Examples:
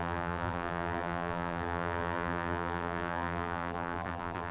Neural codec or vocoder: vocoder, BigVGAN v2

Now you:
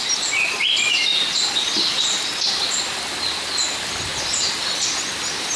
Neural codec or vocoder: none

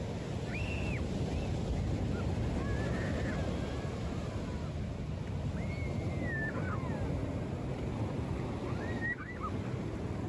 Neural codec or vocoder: none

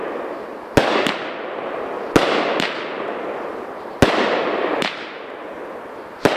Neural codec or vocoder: none